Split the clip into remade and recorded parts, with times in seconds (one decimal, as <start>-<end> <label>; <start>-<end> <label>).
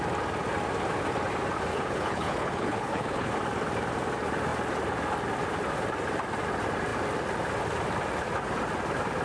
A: 0.0-1.7 recorded; 1.7-3.3 remade; 3.3-9.2 recorded